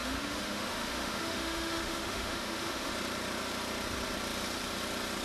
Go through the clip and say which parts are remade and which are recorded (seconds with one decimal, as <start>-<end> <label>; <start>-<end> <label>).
0.0-2.9 remade; 2.9-5.2 recorded